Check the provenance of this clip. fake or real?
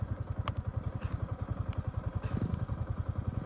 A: real